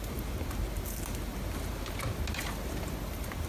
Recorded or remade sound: recorded